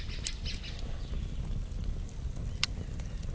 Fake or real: real